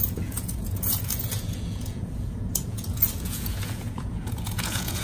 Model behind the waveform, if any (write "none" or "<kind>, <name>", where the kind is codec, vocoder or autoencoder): vocoder, Vocos